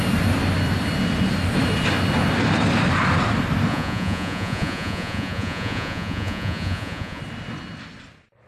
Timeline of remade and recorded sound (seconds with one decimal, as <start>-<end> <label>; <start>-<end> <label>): 0.0-3.7 recorded; 3.7-7.2 remade; 7.2-8.5 recorded